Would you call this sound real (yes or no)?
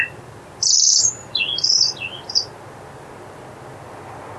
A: yes